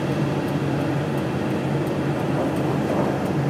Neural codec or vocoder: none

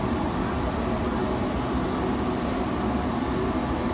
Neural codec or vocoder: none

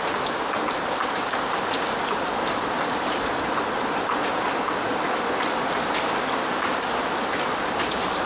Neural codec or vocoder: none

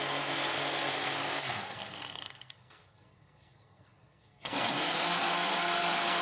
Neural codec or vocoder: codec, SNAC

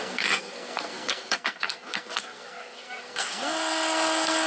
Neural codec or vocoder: codec, SNAC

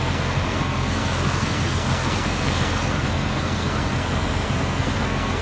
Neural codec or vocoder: codec, SNAC